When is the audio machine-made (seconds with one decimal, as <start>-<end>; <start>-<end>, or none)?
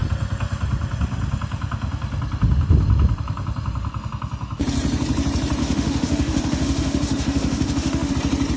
5.6-8.1